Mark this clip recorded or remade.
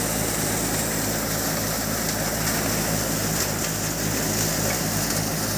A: recorded